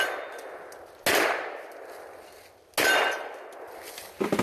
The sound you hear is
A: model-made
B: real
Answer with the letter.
B